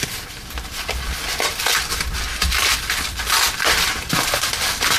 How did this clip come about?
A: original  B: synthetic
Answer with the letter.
B